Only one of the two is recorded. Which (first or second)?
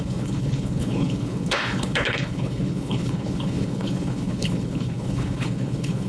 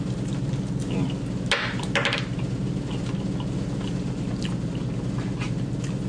second